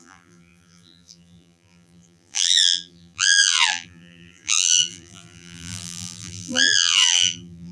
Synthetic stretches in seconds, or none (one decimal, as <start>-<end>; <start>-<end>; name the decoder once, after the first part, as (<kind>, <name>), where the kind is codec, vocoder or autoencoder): 0.0-7.7 (vocoder, BigVGAN v2)